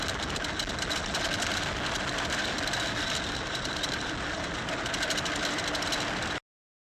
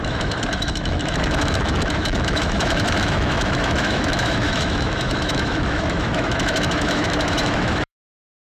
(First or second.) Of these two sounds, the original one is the first